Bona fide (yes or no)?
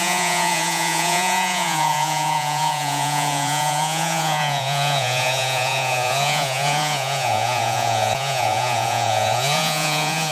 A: no